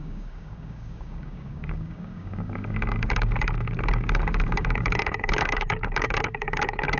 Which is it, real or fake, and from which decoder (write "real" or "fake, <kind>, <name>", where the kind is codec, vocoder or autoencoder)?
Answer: fake, codec, DAC